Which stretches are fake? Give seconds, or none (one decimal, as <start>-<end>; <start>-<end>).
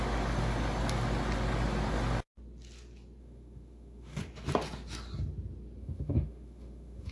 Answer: 3.2-4.2; 5.8-7.1